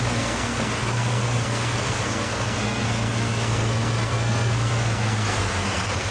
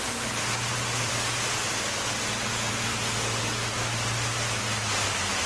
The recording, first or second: second